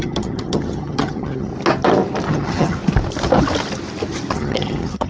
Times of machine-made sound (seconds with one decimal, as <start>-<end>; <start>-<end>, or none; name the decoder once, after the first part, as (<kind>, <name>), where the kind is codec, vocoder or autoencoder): 0.0-1.5 (vocoder, HiFi-GAN); 2.3-2.8; 4.3-5.1